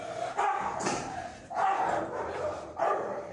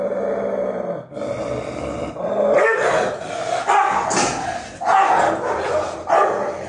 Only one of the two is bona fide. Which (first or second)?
second